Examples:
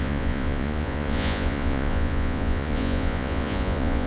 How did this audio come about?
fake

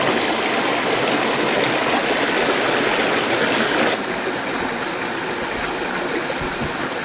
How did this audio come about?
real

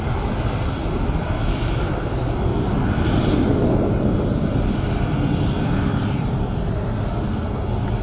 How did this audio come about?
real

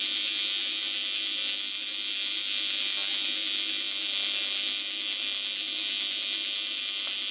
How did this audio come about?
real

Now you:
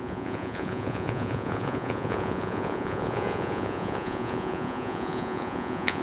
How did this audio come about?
fake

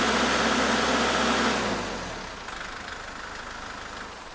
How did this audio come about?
real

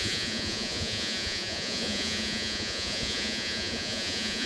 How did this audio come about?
fake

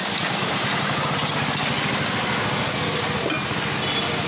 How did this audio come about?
real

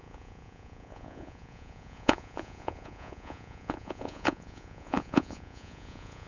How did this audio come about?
fake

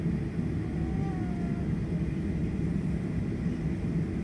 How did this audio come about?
real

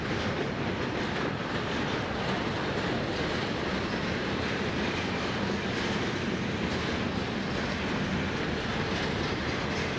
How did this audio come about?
real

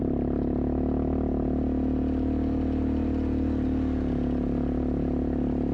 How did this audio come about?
real